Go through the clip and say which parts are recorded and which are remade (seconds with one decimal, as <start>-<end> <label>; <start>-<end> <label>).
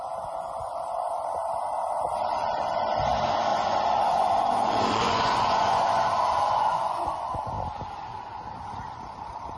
0.0-3.5 recorded; 3.5-7.5 remade; 7.5-9.6 recorded